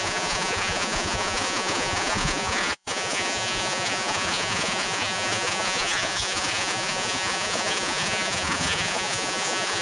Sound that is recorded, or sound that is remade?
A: remade